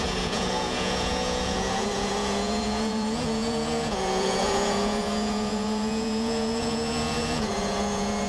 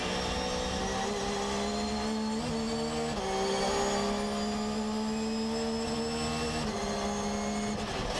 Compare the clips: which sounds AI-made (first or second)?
first